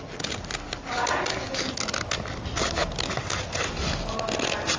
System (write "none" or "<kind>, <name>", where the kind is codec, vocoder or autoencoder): none